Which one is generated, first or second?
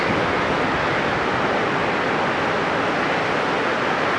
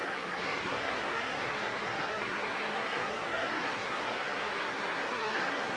second